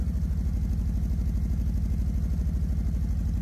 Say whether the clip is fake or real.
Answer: real